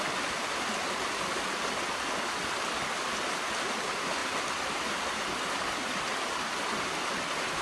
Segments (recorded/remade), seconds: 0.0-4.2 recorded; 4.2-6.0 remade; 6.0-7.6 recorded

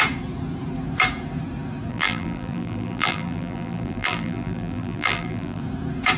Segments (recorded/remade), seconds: 0.0-1.9 recorded; 1.9-5.6 remade; 5.6-6.2 recorded

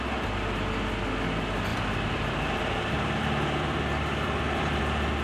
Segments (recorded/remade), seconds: 0.0-1.7 recorded; 1.7-4.8 remade; 4.8-5.2 recorded

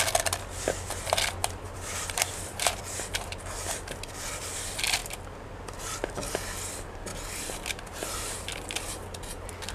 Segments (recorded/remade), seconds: 0.0-1.4 recorded; 1.4-2.8 remade; 2.8-7.1 recorded; 7.1-8.3 remade; 8.3-9.7 recorded

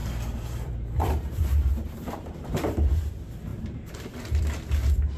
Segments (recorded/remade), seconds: 0.0-3.1 remade; 3.1-3.5 recorded; 3.5-4.4 remade; 4.4-5.2 recorded

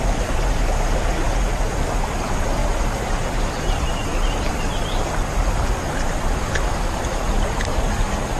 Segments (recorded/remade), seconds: 0.0-2.6 recorded; 2.6-4.5 remade; 4.5-8.4 recorded